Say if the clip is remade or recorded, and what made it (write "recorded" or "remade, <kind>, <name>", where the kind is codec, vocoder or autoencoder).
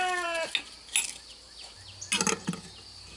recorded